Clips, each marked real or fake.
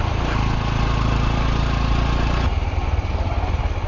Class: real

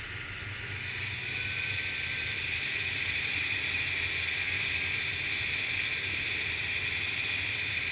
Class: real